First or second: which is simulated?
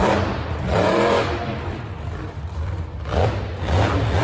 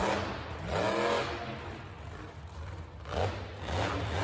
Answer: first